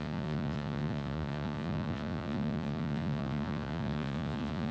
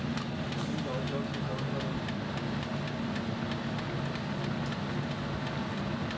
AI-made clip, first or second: first